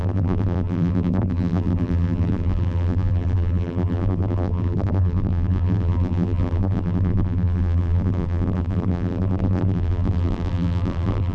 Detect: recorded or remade remade